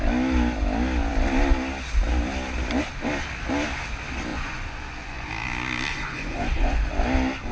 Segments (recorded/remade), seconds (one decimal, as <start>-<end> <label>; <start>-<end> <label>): 0.0-4.3 recorded; 4.3-5.3 remade; 5.3-5.9 recorded; 5.9-6.9 remade; 6.9-7.5 recorded